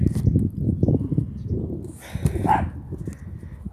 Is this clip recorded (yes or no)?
yes